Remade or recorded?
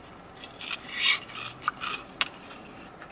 recorded